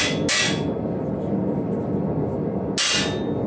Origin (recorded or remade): recorded